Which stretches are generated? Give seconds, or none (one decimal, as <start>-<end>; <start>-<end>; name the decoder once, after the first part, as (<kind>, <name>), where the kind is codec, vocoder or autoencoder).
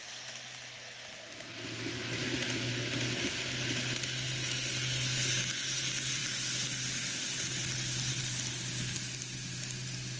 none